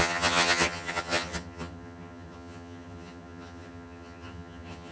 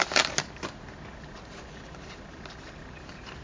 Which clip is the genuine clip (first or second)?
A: second